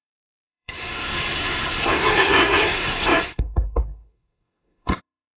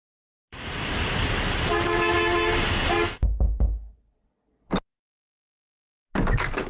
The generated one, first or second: first